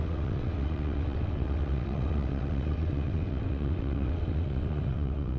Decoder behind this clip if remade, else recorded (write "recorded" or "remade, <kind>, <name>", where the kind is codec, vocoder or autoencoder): remade, vocoder, WaveNeXt